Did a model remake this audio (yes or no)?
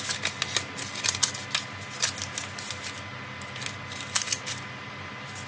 no